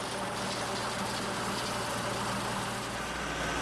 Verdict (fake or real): real